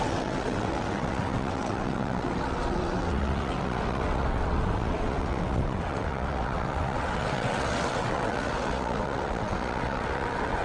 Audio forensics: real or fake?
fake